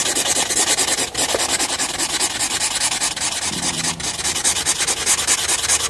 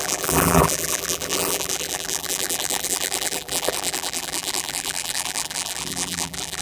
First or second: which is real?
first